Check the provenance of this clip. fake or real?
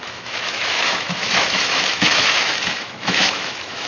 fake